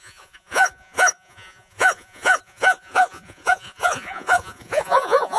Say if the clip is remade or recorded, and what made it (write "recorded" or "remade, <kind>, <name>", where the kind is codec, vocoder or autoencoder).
remade, vocoder, Vocos